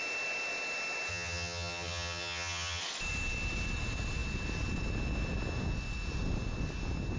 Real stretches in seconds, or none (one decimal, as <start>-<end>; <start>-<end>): 0.0-1.1; 2.8-7.2

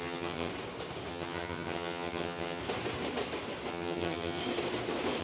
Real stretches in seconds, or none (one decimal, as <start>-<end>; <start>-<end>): 0.5-1.1; 2.6-3.7; 4.4-5.2